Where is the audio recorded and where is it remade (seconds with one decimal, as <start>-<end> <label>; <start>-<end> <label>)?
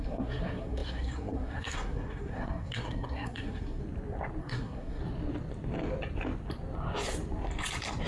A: 0.0-3.8 remade; 3.8-4.4 recorded; 4.4-5.0 remade; 5.0-8.1 recorded